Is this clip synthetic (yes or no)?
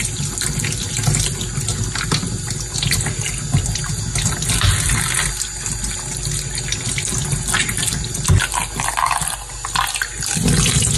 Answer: no